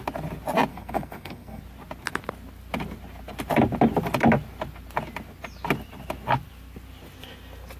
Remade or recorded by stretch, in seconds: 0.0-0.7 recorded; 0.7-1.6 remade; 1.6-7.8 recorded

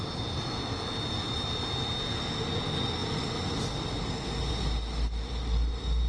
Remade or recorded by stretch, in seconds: 0.0-6.1 recorded

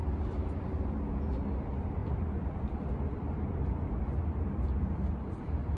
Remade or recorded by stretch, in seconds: 0.0-0.9 remade; 0.9-2.0 recorded; 2.0-5.8 remade

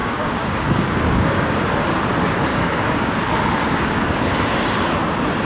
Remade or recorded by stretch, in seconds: 0.0-1.4 remade; 1.4-2.5 recorded; 2.5-3.2 remade; 3.2-3.6 recorded; 3.6-4.2 remade; 4.2-5.4 recorded

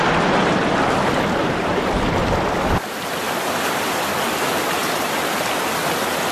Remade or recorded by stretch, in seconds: 0.0-1.4 recorded; 1.4-1.9 remade; 1.9-6.3 recorded

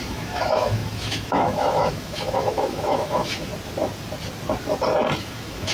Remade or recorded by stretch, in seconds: 0.0-3.5 remade; 3.5-5.2 recorded; 5.2-5.7 remade

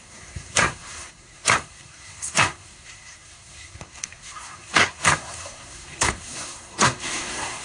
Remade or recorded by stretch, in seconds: 0.0-7.6 remade